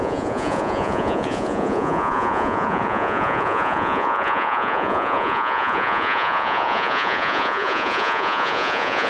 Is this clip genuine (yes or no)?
no